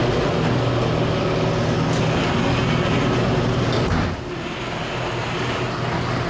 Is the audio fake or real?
real